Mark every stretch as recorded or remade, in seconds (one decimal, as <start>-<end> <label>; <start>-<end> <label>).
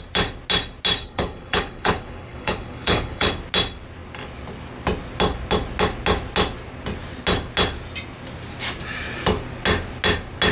0.0-1.0 recorded; 1.0-3.3 remade; 3.3-10.5 recorded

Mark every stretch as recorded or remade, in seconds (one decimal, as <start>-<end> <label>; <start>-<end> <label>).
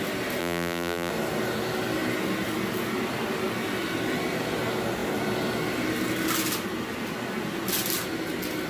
0.0-0.4 recorded; 0.4-1.1 remade; 1.1-8.7 recorded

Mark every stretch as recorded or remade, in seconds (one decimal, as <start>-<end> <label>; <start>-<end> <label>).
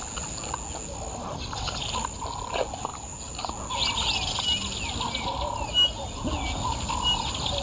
0.0-7.6 recorded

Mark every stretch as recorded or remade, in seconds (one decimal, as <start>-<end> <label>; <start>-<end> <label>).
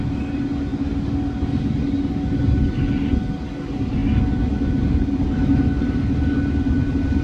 0.0-7.2 recorded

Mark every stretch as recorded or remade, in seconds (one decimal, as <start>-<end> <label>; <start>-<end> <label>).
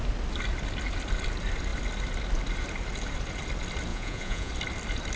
0.0-3.9 recorded; 3.9-4.5 remade; 4.5-5.2 recorded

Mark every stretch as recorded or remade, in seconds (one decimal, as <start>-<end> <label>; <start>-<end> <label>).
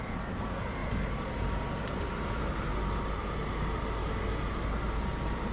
0.0-0.8 recorded; 0.8-2.7 remade; 2.7-5.5 recorded